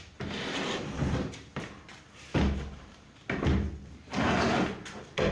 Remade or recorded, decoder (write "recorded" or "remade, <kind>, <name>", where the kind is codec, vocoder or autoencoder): recorded